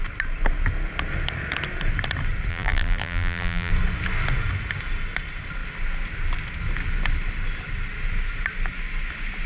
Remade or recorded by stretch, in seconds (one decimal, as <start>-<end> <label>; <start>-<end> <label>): 0.0-2.5 recorded; 2.5-3.7 remade; 3.7-9.5 recorded